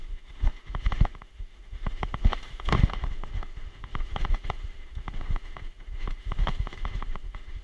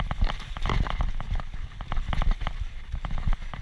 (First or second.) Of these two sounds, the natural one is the second